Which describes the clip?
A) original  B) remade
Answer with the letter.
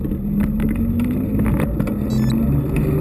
A